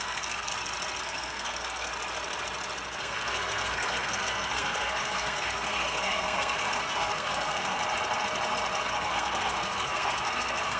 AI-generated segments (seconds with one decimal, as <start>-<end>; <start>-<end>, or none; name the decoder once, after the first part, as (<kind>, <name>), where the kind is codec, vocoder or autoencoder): 0.0-0.5 (codec, SNAC); 1.0-1.9; 3.0-7.8; 8.9-10.8